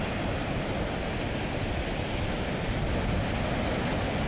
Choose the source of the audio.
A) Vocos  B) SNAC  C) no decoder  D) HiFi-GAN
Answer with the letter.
C